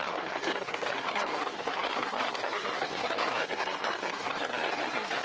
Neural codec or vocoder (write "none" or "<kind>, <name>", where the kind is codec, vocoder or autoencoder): codec, SNAC